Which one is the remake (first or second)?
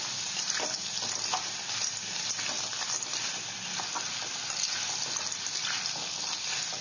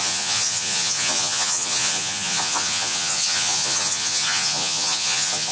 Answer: second